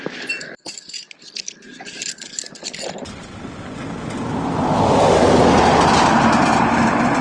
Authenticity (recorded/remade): recorded